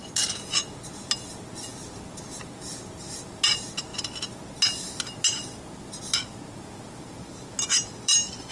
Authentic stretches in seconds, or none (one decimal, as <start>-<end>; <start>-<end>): 0.0-8.5